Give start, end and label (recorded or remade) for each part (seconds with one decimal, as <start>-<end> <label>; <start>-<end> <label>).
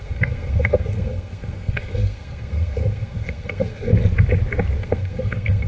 0.0-3.9 remade; 3.9-4.8 recorded; 4.8-5.7 remade